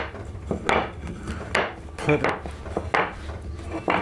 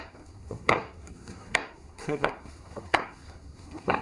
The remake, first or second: second